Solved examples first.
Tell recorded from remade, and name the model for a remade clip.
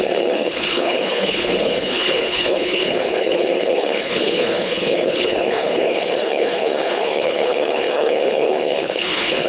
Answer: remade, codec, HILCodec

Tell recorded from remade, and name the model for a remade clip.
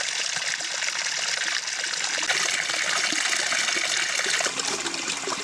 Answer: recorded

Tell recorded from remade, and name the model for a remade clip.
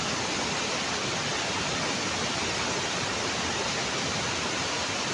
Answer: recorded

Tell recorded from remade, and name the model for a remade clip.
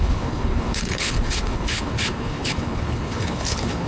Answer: remade, codec, HILCodec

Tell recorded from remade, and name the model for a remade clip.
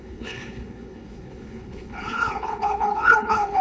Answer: remade, codec, HILCodec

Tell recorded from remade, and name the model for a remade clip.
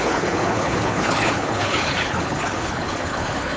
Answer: remade, codec, HILCodec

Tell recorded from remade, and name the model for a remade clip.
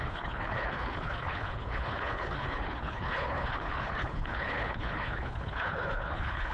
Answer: remade, codec, HILCodec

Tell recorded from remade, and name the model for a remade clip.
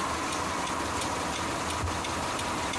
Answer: recorded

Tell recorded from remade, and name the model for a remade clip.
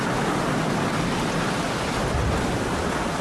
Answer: recorded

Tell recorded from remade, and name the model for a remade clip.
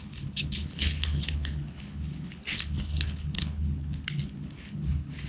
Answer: remade, codec, HILCodec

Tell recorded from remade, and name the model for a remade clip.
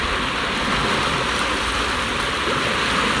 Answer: recorded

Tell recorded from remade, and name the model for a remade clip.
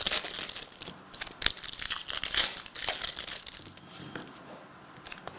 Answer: recorded